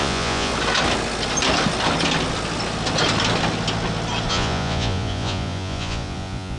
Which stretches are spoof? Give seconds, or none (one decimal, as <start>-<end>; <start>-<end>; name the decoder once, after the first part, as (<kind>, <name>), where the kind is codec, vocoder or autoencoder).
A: 0.0-0.5 (vocoder, Vocos); 4.3-6.6